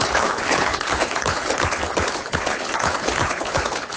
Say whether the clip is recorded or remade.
remade